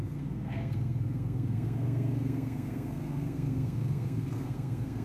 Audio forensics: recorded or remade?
remade